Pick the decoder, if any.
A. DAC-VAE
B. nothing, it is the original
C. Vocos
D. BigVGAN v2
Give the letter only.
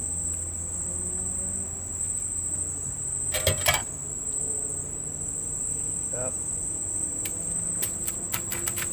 B